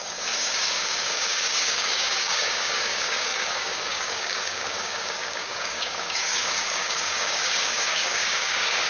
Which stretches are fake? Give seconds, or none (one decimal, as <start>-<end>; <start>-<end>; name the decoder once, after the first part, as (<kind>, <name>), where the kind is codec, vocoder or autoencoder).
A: 0.0-8.9 (codec, DAC)